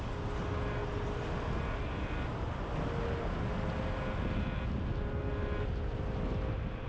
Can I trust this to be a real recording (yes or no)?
yes